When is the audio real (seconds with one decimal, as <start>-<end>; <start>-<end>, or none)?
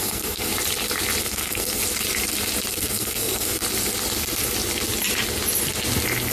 0.5-1.2; 1.8-2.7; 3.6-6.3